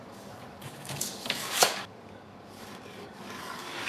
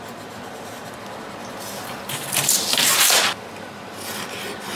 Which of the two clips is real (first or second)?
second